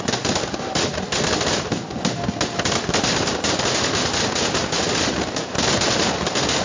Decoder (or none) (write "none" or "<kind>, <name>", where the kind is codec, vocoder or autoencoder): none